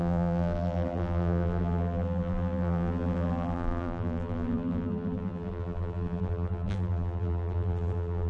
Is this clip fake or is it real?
fake